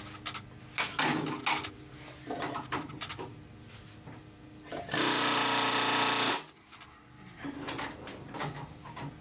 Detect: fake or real real